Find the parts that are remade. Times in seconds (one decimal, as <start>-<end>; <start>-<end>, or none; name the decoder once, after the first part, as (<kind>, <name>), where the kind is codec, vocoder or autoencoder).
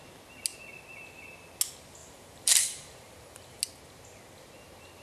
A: 2.0-3.6 (vocoder, BigVGAN v2)